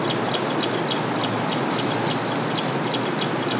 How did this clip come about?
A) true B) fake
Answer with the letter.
A